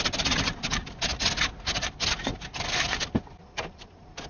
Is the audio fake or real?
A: real